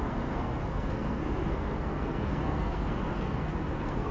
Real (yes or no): no